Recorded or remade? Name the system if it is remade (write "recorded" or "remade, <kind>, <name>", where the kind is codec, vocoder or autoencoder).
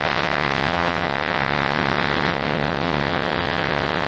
remade, vocoder, WaveNeXt